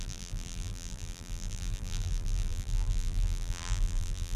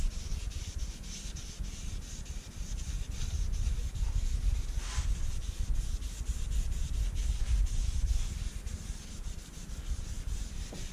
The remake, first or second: first